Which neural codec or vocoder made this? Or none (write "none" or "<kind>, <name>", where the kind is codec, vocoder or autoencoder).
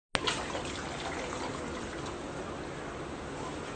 none